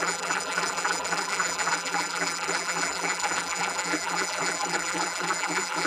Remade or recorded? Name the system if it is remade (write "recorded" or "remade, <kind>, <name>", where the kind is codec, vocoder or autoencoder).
remade, vocoder, BigVGAN v2